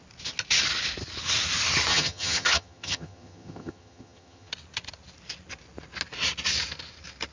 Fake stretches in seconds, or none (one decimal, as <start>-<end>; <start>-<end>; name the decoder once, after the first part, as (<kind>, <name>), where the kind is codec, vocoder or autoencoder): 1.9-4.5 (vocoder, HiFi-GAN)